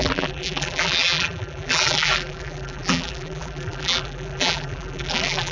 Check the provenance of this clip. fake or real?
fake